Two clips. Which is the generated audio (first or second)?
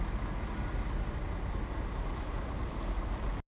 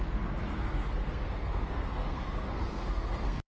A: second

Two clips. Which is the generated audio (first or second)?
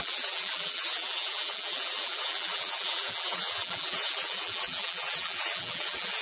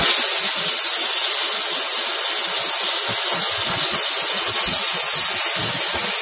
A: first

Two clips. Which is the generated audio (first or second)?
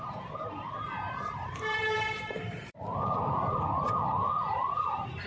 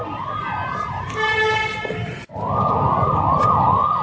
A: first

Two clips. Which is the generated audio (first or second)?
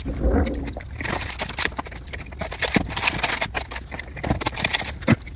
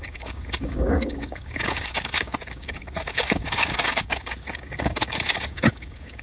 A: second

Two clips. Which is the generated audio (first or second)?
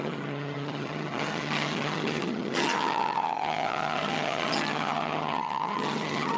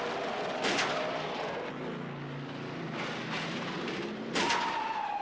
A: first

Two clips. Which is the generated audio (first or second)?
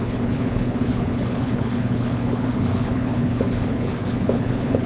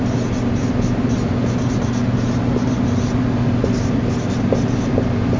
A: first